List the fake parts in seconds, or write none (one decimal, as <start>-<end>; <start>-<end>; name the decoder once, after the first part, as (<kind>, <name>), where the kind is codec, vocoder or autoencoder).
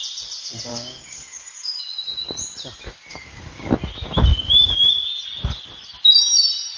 0.7-1.8 (codec, DAC); 3.1-3.7; 4.3-4.9